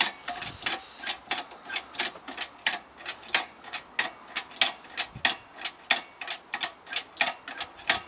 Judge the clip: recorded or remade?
recorded